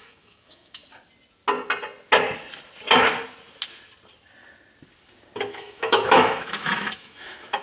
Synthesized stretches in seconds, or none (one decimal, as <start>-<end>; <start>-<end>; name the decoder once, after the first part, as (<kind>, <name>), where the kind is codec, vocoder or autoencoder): 0.0-0.8 (autoencoder, DAC-VAE); 5.4-7.6